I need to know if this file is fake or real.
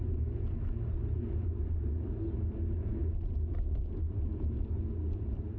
real